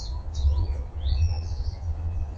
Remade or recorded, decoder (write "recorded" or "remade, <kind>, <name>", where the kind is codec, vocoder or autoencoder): remade, vocoder, Vocos